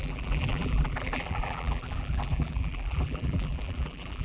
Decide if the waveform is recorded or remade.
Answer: remade